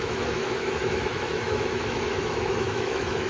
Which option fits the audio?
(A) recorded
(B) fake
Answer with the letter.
B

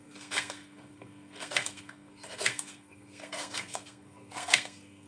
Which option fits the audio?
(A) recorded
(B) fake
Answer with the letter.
B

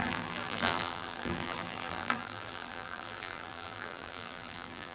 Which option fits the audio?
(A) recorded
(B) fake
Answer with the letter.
B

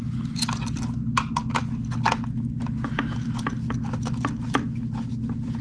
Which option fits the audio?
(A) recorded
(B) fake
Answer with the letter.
A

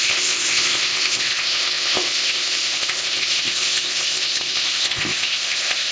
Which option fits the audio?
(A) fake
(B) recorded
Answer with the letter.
A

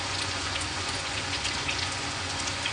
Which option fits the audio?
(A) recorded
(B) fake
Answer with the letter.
B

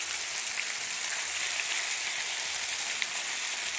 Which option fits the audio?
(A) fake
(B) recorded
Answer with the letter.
B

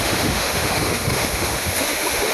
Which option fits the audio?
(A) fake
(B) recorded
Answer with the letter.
A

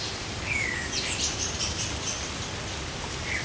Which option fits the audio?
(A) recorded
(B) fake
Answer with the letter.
B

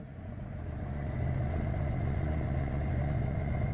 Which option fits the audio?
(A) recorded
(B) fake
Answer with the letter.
B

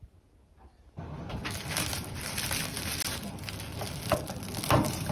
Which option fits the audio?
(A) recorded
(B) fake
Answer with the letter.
A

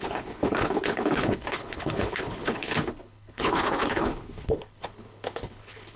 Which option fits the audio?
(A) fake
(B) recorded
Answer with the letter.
A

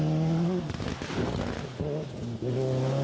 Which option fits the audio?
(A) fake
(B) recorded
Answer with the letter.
B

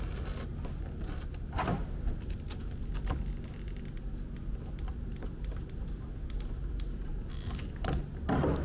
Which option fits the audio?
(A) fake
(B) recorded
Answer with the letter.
B